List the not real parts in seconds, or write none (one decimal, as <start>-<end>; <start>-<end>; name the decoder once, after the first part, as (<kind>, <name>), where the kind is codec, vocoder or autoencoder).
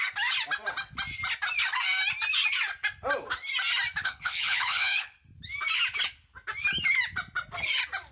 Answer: 4.0-5.2 (codec, HILCodec)